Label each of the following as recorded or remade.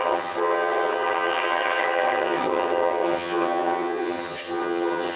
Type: remade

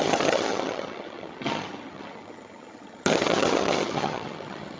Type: remade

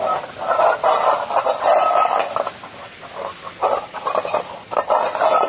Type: recorded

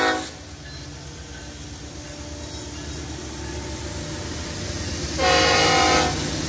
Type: recorded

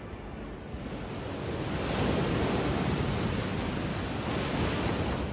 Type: recorded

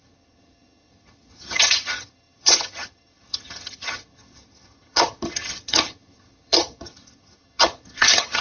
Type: remade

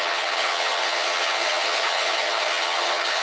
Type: remade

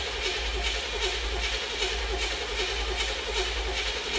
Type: recorded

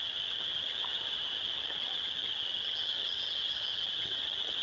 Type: remade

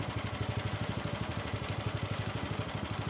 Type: recorded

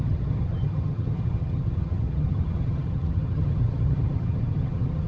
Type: remade